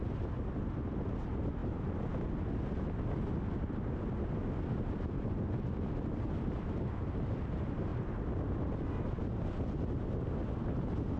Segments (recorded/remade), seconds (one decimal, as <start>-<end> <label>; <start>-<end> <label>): 0.0-11.2 recorded